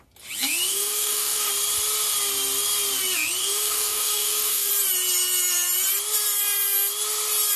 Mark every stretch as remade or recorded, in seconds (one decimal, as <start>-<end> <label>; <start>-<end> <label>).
0.0-0.7 recorded; 0.7-1.5 remade; 1.5-3.4 recorded; 3.4-4.7 remade; 4.7-7.6 recorded